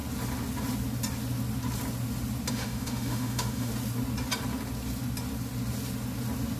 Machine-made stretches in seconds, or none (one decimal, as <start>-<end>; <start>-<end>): 2.5-3.7